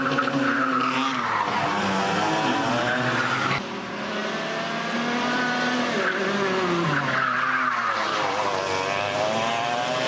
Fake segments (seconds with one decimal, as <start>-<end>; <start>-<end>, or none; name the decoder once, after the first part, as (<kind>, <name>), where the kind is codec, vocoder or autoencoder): none